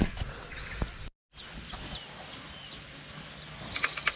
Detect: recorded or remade recorded